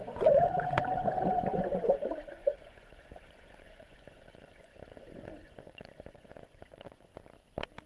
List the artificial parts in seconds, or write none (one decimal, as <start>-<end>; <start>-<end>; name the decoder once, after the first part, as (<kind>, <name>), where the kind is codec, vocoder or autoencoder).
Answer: 0.0-7.1 (vocoder, Vocos)